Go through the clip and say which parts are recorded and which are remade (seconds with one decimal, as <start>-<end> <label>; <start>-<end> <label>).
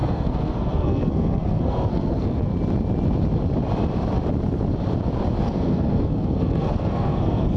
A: 0.0-2.5 remade; 2.5-5.4 recorded; 5.4-7.6 remade